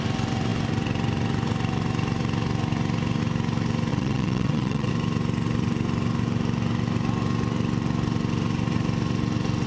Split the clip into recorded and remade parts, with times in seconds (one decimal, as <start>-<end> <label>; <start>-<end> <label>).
0.0-3.9 recorded; 3.9-4.9 remade; 4.9-9.7 recorded